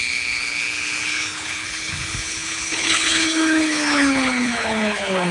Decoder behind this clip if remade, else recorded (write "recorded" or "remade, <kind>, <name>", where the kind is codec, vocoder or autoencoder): remade, codec, HILCodec